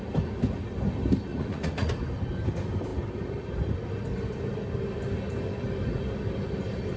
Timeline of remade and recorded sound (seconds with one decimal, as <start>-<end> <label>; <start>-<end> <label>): 0.0-1.3 recorded; 1.3-1.9 remade; 1.9-7.0 recorded